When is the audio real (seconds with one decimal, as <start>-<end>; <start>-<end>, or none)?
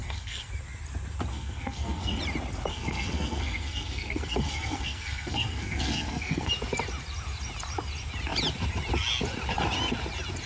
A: 0.5-1.3; 2.2-2.7; 6.5-10.5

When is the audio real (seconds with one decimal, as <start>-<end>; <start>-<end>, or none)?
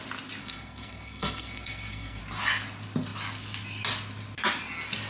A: 0.0-0.4; 2.2-5.1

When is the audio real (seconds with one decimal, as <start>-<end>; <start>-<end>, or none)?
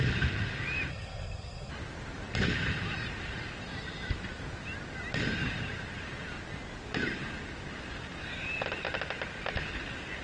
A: 0.0-0.9; 1.7-10.2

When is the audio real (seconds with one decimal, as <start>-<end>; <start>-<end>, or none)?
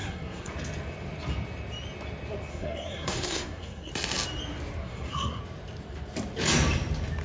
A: 0.5-2.5; 3.9-4.8; 5.4-7.2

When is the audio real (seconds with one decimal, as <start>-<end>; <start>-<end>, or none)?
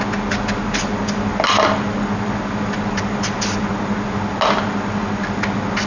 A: 0.0-5.9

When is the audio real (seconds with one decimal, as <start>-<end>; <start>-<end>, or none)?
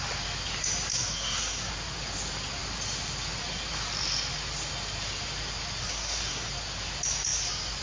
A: 0.0-0.9; 1.7-5.8; 6.5-7.8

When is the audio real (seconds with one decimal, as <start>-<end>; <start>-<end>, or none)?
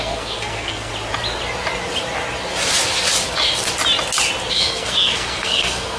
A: 0.9-4.5